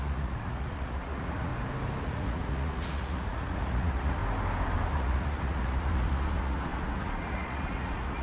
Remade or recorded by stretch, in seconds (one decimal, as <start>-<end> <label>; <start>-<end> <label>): 0.0-1.5 remade; 1.5-2.0 recorded; 2.0-4.2 remade; 4.2-4.9 recorded; 4.9-8.2 remade